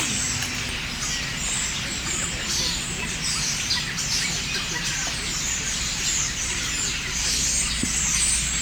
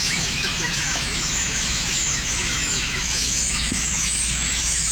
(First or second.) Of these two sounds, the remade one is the second